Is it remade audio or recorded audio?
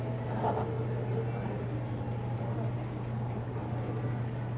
recorded